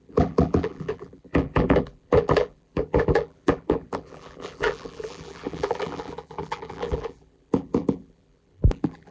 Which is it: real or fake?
fake